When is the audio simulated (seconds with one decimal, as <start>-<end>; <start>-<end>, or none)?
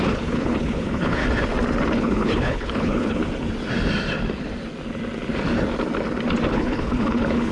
0.0-1.2; 1.9-3.2; 6.5-7.5